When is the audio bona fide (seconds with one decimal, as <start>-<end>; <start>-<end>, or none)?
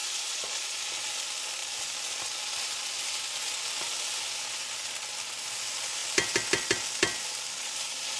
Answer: 0.8-8.2